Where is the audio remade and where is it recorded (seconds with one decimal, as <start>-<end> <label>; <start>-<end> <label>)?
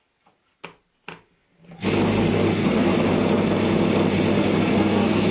0.0-2.6 recorded; 2.6-3.1 remade; 3.1-4.3 recorded; 4.3-5.3 remade